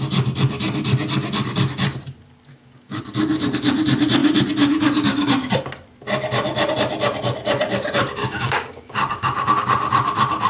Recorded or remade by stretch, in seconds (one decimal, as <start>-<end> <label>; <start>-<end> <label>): 0.0-2.5 recorded; 2.5-3.0 remade; 3.0-8.2 recorded; 8.2-9.5 remade; 9.5-10.5 recorded